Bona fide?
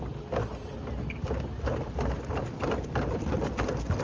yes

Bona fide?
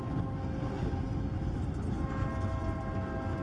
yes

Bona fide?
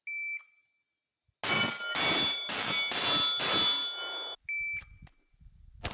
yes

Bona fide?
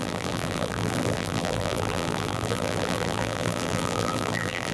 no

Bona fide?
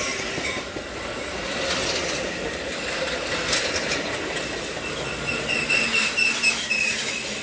yes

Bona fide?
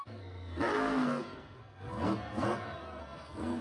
no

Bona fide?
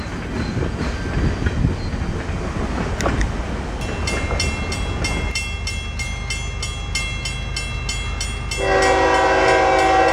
yes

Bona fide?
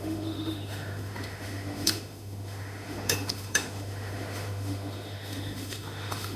no